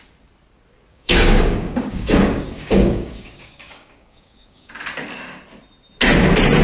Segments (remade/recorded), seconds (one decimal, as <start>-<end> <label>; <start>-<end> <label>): 0.0-0.9 recorded; 0.9-4.9 remade; 4.9-6.6 recorded